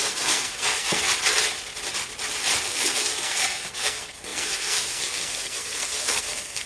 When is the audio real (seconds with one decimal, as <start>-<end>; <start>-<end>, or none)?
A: 1.1-2.6